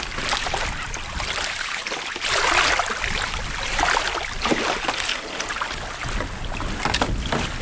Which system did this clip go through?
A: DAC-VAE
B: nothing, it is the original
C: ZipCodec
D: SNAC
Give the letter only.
B